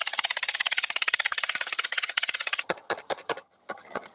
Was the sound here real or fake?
fake